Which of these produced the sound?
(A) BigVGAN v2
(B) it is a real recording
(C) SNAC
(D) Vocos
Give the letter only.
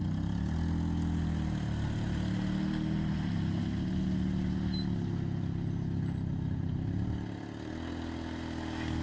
B